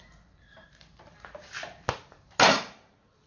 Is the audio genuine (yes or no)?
yes